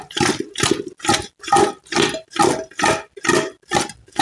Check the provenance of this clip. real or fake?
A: real